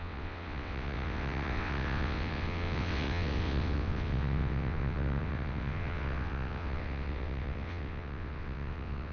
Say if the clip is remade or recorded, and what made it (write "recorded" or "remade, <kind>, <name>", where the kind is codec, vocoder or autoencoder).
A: remade, vocoder, WaveNeXt